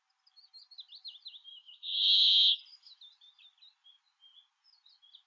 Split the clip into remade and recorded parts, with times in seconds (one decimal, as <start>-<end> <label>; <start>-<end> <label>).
0.0-1.5 recorded; 1.5-2.6 remade; 2.6-5.3 recorded